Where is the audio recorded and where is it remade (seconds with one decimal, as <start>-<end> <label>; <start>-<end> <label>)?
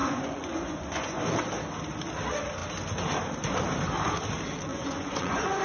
0.0-1.2 remade; 1.2-4.7 recorded; 4.7-5.6 remade